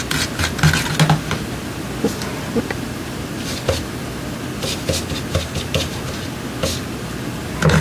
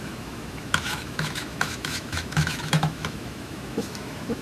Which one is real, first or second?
first